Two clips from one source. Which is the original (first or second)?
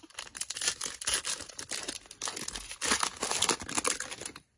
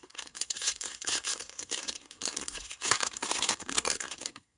first